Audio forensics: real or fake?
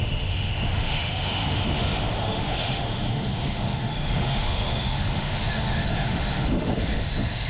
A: fake